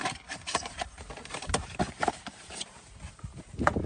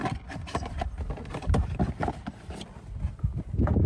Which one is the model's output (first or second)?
first